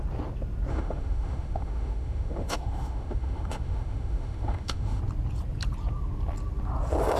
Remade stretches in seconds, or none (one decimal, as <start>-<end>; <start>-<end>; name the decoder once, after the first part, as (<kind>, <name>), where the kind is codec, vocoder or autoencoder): 0.7-5.0 (autoencoder, DAC-VAE)